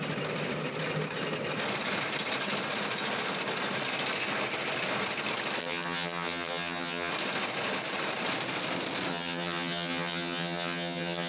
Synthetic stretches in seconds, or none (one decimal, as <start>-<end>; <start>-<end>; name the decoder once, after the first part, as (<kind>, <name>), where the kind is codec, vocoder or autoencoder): 5.6-7.1 (vocoder, HiFi-GAN); 9.1-11.3